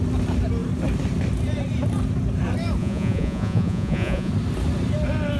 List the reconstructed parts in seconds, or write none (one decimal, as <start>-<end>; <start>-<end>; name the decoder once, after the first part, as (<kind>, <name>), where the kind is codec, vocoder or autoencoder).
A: 2.8-4.3 (vocoder, Vocos)